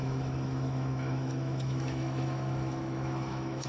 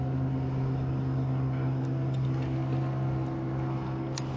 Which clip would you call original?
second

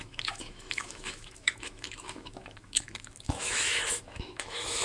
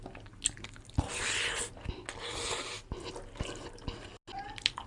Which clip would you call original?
second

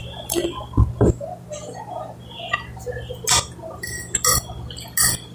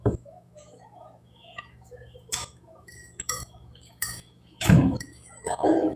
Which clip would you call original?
first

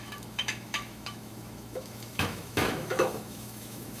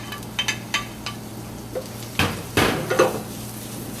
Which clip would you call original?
second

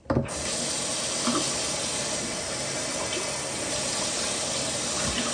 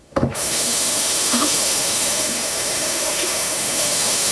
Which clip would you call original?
first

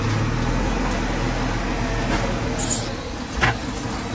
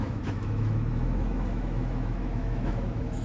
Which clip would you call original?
first